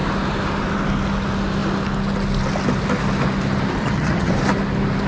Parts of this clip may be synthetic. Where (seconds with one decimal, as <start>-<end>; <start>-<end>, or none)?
3.8-4.3